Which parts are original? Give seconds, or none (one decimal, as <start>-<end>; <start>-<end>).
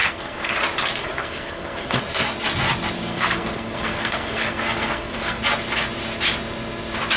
0.6-1.0; 2.0-3.1; 5.4-7.2